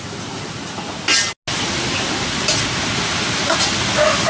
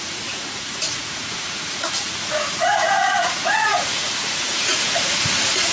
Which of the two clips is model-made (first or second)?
second